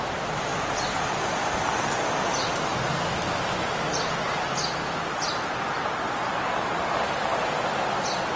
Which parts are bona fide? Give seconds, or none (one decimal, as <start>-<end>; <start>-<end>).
0.5-1.0; 2.7-7.7